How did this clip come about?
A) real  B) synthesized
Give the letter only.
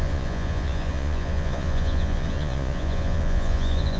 B